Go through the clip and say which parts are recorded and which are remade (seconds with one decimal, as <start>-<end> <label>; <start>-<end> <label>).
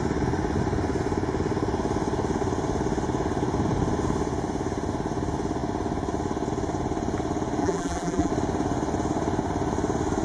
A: 0.0-7.6 recorded; 7.6-8.3 remade; 8.3-10.2 recorded